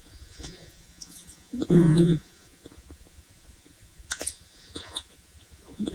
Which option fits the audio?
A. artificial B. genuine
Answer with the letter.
A